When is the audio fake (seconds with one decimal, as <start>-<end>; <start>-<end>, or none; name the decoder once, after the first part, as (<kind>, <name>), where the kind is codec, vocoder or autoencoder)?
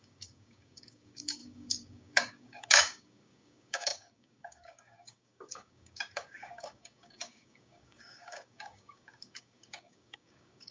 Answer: 0.0-10.7 (codec, DAC)